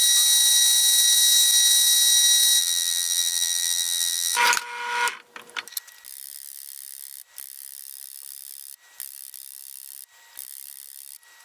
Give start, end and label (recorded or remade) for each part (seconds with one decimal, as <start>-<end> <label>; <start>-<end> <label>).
0.0-2.6 recorded; 2.6-4.4 remade; 4.4-11.4 recorded